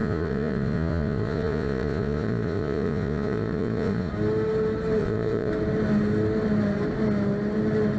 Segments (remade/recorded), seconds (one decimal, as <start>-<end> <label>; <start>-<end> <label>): 0.0-4.1 remade; 4.1-5.0 recorded; 5.0-5.5 remade; 5.5-8.0 recorded